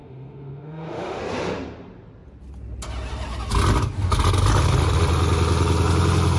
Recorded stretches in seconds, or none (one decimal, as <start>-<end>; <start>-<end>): 1.2-6.4